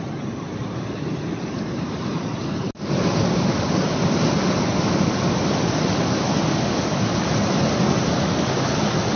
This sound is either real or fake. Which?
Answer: real